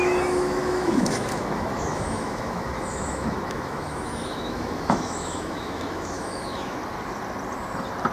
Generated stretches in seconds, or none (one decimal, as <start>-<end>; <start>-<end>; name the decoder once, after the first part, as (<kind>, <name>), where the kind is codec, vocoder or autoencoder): 0.0-6.8 (autoencoder, DAC-VAE)